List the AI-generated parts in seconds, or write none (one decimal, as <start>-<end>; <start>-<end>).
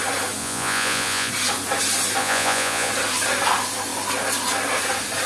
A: 0.4-1.3; 2.2-2.9